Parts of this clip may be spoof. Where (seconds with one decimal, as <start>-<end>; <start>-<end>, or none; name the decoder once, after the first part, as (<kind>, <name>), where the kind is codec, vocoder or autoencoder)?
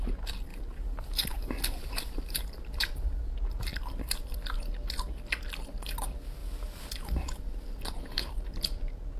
none